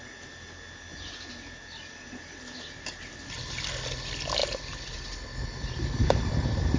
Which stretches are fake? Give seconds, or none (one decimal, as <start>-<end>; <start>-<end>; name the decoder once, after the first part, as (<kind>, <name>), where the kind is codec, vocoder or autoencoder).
none